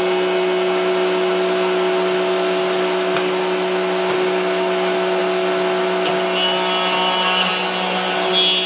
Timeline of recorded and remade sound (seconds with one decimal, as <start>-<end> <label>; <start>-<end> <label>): 0.0-8.7 recorded